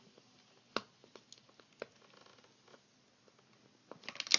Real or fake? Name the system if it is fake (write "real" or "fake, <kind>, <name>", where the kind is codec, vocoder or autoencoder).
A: real